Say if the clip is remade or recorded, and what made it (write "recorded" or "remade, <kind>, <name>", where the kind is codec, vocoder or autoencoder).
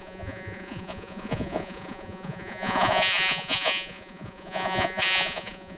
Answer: remade, vocoder, Vocos